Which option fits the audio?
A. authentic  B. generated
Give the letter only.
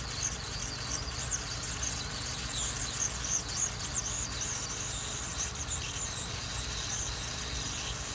A